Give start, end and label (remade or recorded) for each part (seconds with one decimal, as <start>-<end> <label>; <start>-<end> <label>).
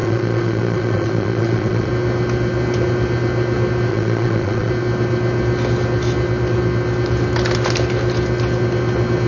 0.0-1.9 remade; 1.9-3.9 recorded; 3.9-4.7 remade; 4.7-9.3 recorded